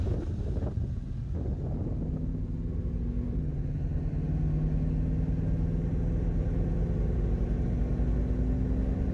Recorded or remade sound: recorded